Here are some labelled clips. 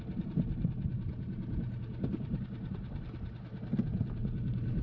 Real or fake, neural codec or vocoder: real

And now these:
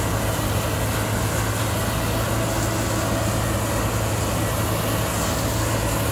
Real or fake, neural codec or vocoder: real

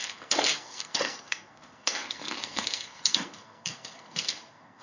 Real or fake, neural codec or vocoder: fake, codec, SNAC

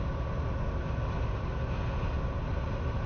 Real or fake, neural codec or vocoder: real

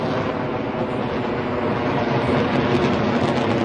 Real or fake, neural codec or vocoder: real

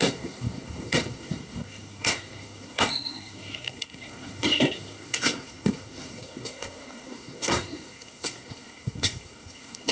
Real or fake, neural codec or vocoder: fake, codec, SNAC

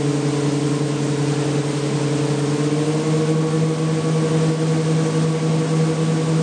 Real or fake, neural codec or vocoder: real